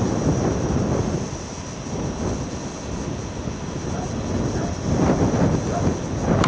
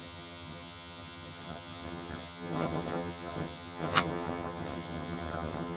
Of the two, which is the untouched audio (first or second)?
first